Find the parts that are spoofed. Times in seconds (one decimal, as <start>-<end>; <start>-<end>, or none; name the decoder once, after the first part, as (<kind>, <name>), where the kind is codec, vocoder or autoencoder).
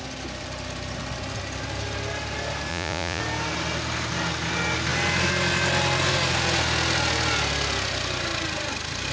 2.7-3.2 (vocoder, Vocos)